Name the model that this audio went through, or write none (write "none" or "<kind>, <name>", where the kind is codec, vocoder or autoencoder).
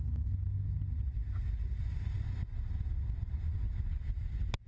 none